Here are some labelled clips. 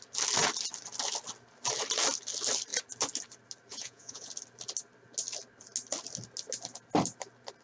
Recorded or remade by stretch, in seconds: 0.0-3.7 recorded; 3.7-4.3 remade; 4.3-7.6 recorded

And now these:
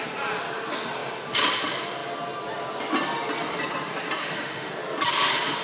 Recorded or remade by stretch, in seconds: 0.0-4.2 recorded; 4.2-4.7 remade; 4.7-5.6 recorded

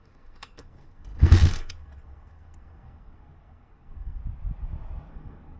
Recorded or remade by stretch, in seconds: 0.0-4.2 remade; 4.2-5.1 recorded; 5.1-5.6 remade

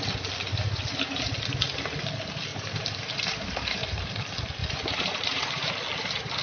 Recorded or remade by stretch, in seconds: 0.0-0.5 recorded; 0.5-1.4 remade; 1.4-2.5 recorded; 2.5-4.1 remade; 4.1-4.6 recorded; 4.6-5.7 remade; 5.7-6.4 recorded

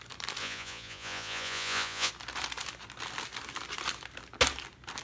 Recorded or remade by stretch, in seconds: 0.0-0.4 recorded; 0.4-2.1 remade; 2.1-5.0 recorded